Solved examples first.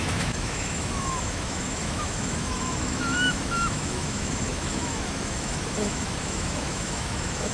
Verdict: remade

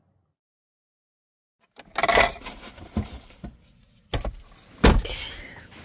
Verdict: recorded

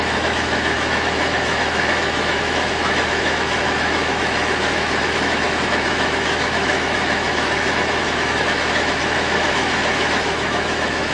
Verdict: remade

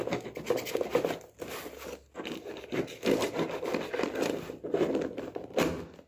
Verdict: recorded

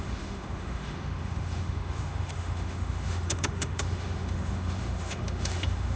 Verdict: remade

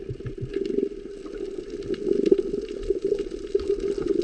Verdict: recorded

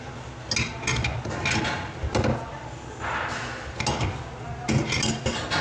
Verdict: recorded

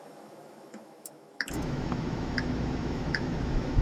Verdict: remade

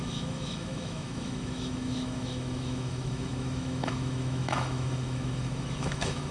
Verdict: remade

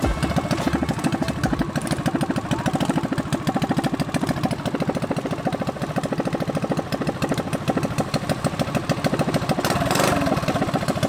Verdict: recorded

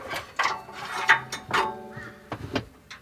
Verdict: recorded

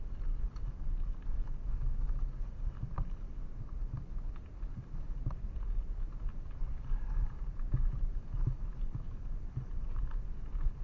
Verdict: recorded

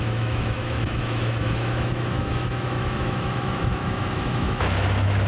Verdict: remade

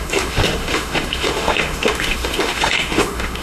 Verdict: remade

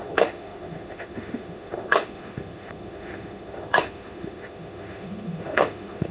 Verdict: remade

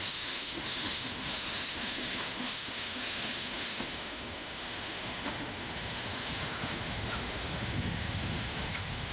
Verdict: remade